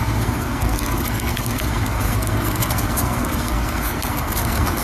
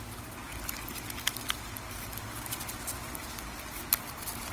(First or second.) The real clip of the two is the second